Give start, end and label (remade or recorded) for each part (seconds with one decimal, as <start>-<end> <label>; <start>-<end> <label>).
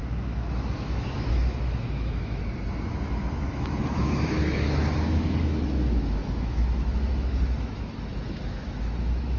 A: 0.0-2.4 remade; 2.4-3.1 recorded; 3.1-9.4 remade